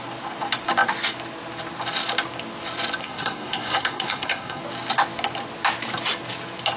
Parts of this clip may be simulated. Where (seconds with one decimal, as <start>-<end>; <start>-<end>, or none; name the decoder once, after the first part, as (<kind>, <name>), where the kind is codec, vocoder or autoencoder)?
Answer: 3.0-4.6 (codec, SNAC)